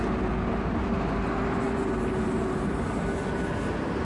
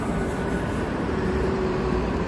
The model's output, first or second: second